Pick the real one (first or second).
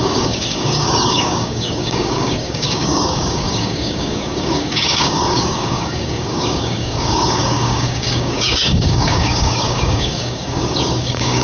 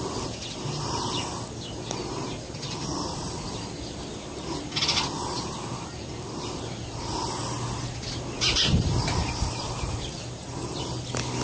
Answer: second